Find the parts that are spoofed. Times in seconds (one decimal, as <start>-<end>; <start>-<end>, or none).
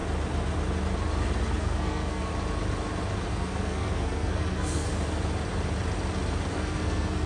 1.6-2.3; 3.3-4.9; 6.5-7.3